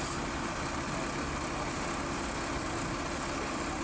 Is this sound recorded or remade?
recorded